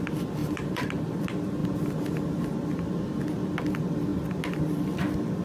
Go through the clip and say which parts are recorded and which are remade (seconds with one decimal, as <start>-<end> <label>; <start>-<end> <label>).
0.0-0.4 recorded; 0.4-1.2 remade; 1.2-5.4 recorded